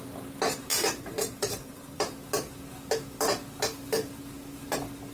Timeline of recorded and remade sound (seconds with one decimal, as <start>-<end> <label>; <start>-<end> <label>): 0.0-0.7 recorded; 0.7-2.1 remade; 2.1-5.1 recorded